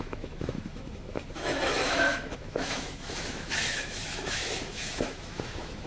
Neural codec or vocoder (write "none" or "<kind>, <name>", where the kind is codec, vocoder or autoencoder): autoencoder, DAC-VAE